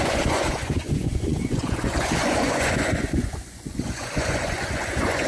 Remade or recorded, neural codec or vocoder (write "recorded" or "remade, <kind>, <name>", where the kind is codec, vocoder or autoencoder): remade, vocoder, Vocos